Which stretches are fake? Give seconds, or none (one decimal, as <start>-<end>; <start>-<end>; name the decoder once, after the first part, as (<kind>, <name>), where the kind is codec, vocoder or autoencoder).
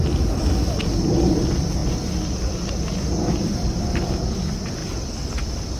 none